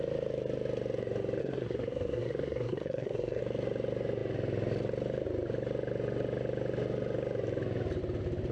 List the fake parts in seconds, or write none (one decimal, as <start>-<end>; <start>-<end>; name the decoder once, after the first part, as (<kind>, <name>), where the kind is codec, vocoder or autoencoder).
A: 1.4-3.4 (codec, SNAC)